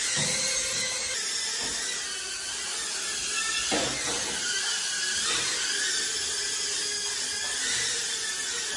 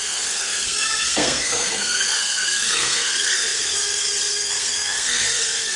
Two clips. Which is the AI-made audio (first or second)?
second